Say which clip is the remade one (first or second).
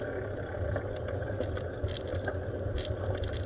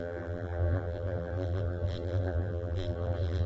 second